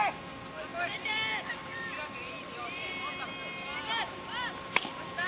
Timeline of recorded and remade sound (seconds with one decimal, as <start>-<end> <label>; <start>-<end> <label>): 0.0-0.7 recorded; 0.7-2.9 remade; 2.9-3.7 recorded; 3.7-5.3 remade